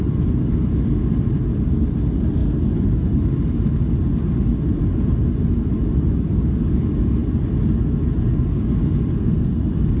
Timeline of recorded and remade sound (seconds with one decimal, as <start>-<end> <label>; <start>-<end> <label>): 0.0-9.1 recorded; 9.1-9.6 remade; 9.6-10.0 recorded